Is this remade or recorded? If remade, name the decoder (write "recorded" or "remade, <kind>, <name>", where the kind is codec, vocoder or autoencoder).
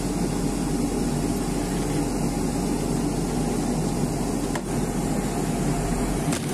recorded